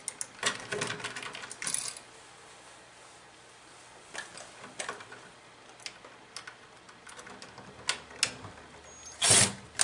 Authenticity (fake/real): real